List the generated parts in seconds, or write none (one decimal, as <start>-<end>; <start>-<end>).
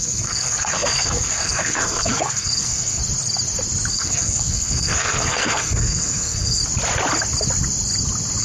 0.0-3.0; 3.9-6.6